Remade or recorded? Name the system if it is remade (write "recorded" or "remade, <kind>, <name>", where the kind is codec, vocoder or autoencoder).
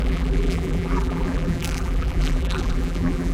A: remade, vocoder, BigVGAN v2